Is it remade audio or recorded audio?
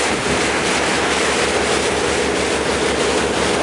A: recorded